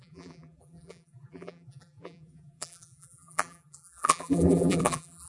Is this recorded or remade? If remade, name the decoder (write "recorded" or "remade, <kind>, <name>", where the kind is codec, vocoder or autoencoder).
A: remade, vocoder, BigVGAN v2